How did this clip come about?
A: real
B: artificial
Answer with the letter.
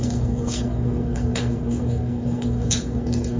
B